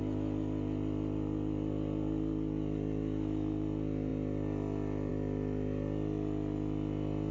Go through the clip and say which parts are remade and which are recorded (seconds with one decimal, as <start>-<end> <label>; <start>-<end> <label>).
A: 0.0-7.3 recorded

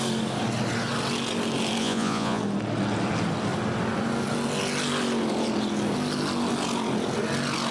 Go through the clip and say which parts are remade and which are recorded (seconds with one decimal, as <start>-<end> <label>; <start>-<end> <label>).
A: 0.0-1.8 recorded; 1.8-2.4 remade; 2.4-7.7 recorded